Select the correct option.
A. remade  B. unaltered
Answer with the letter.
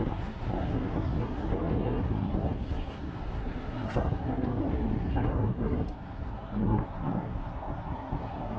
A